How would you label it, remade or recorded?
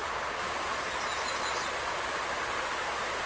recorded